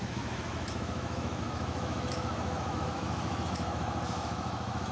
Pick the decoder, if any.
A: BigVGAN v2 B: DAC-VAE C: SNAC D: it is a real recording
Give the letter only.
B